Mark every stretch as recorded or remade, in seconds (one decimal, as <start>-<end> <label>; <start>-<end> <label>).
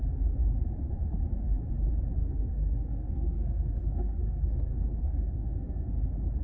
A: 0.0-2.2 recorded; 2.2-6.0 remade; 6.0-6.4 recorded